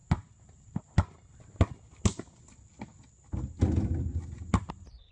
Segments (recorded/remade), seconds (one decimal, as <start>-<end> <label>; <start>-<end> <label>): 0.0-5.1 recorded